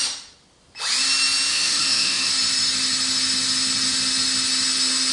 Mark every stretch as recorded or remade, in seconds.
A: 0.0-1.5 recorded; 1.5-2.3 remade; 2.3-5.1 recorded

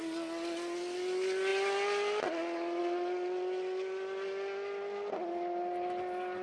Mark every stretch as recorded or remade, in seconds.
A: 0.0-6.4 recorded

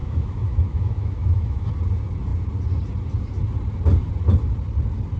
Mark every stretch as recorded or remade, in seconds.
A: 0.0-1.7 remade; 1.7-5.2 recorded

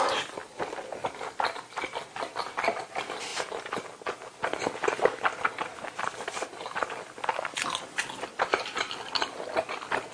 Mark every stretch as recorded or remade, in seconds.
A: 0.0-10.1 recorded

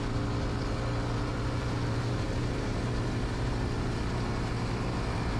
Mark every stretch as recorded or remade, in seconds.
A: 0.0-1.3 recorded; 1.3-4.0 remade; 4.0-5.4 recorded

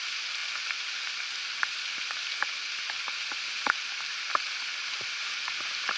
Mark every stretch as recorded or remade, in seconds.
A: 0.0-6.0 recorded

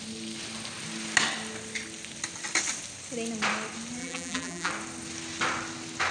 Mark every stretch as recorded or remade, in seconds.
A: 0.0-4.0 recorded; 4.0-4.7 remade; 4.7-6.1 recorded